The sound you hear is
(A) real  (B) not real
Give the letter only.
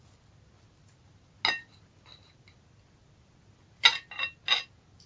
A